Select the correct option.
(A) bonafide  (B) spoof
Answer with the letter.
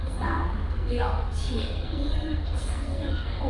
B